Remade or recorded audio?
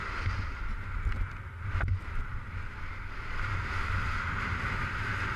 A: recorded